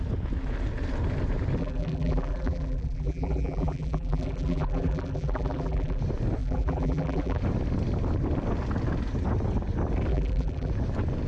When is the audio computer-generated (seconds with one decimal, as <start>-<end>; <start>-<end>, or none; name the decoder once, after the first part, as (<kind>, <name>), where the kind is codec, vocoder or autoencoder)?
1.6-6.0 (vocoder, BigVGAN v2); 6.4-7.4; 10.1-10.7